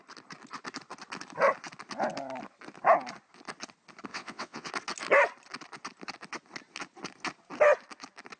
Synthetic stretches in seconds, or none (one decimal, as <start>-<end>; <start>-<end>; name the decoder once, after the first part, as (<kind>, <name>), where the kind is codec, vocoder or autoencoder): 4.1-4.7 (vocoder, WaveNeXt)